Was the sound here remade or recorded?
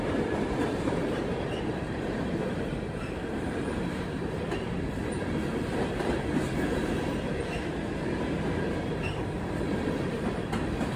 remade